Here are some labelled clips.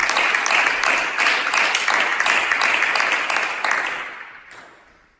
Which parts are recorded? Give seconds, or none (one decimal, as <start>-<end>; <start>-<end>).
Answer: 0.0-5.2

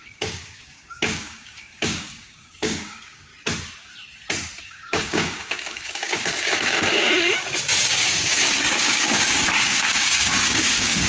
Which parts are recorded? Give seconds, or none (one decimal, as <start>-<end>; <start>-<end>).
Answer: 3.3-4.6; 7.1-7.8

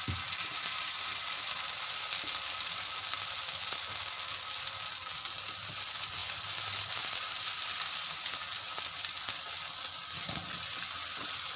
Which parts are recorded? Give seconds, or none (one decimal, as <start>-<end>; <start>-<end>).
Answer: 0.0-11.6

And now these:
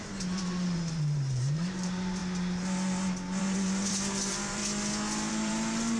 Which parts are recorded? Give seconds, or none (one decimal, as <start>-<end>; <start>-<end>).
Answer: 2.2-3.4; 4.6-5.3

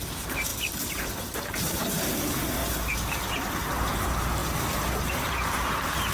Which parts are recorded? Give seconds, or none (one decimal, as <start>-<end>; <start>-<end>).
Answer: 2.6-3.7